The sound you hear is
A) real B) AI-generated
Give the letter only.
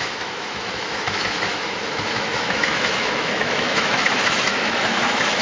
B